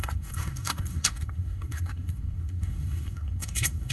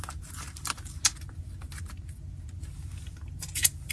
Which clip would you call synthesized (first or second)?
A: first